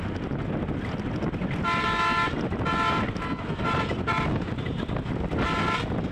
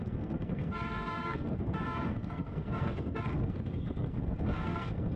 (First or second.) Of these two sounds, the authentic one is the first